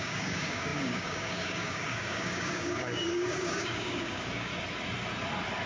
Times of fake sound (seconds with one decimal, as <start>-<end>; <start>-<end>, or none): 0.0-4.5